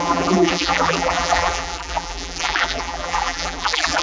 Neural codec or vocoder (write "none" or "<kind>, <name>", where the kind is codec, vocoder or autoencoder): vocoder, BigVGAN v2